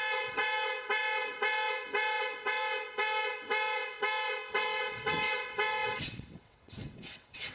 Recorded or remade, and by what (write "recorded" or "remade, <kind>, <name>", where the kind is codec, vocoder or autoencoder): remade, vocoder, WaveNeXt